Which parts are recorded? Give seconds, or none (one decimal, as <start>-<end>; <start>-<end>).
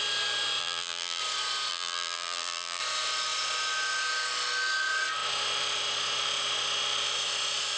0.0-0.6; 1.2-1.7; 2.8-7.8